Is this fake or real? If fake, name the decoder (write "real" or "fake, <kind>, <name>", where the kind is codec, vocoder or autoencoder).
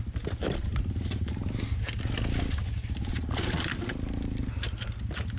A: real